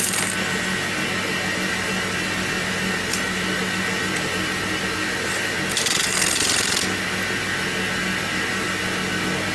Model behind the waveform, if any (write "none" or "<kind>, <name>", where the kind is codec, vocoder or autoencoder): none